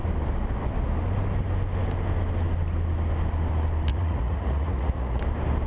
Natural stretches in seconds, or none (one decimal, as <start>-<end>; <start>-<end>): 0.0-3.9; 5.2-5.7